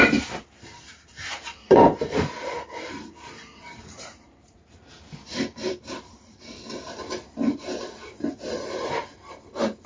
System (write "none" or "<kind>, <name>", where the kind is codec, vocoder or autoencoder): vocoder, BigVGAN v2